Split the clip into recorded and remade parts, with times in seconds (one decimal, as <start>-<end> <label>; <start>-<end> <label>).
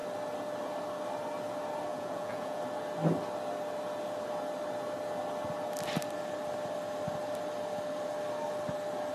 0.0-1.9 recorded; 1.9-2.6 remade; 2.6-9.1 recorded